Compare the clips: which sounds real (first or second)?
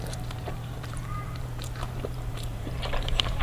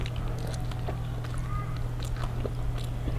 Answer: second